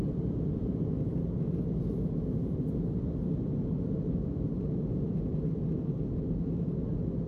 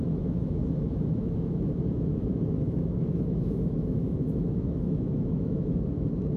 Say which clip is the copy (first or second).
second